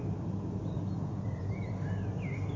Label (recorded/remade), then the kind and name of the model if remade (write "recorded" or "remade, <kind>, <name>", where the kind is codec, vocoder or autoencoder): remade, vocoder, BigVGAN v2